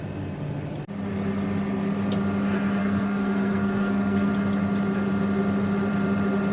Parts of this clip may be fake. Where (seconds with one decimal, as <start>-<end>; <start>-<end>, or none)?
2.8-4.3